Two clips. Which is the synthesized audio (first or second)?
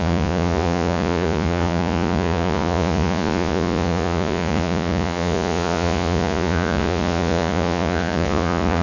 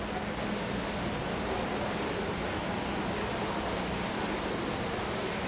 first